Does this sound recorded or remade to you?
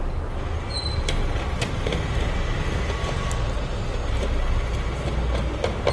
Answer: recorded